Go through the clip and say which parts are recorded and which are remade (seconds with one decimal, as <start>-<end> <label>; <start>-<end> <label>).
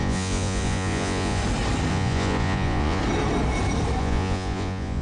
0.0-1.4 remade; 1.4-1.9 recorded; 1.9-3.0 remade; 3.0-4.0 recorded; 4.0-5.0 remade